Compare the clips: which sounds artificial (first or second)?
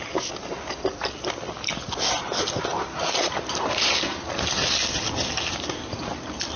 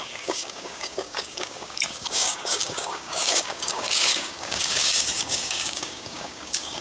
second